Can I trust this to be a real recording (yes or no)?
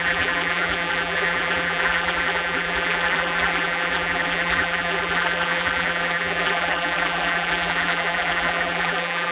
no